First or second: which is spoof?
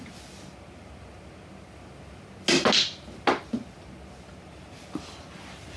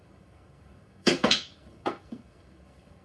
second